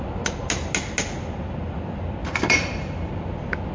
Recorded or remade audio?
recorded